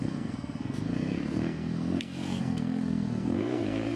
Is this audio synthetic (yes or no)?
yes